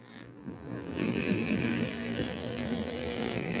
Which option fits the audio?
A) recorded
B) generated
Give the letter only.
B